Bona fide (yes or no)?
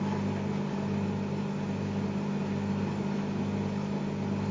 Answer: yes